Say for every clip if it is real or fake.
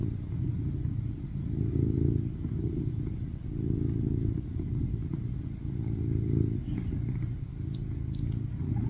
real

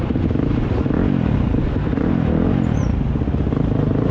real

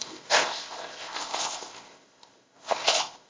fake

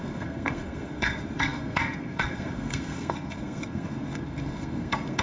fake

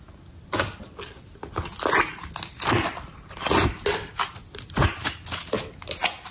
real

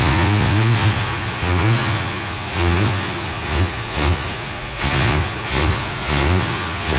fake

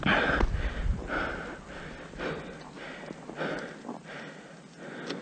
real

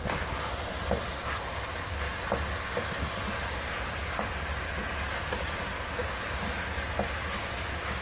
real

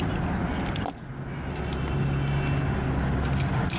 real